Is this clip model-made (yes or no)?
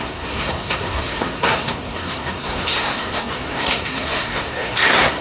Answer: yes